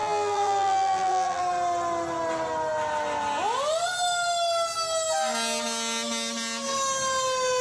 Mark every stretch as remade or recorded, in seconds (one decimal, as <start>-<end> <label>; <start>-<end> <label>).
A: 0.0-1.4 remade; 1.4-7.6 recorded